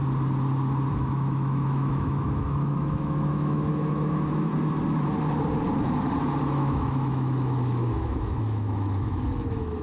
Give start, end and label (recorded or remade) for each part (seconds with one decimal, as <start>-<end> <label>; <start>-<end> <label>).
0.0-0.9 recorded; 0.9-4.5 remade; 4.5-6.4 recorded; 6.4-9.8 remade